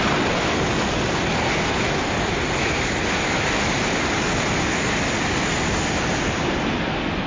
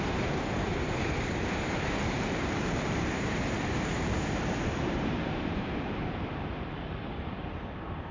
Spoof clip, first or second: second